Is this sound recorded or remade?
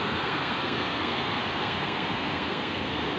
remade